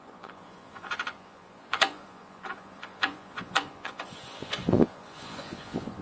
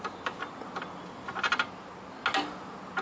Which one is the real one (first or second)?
second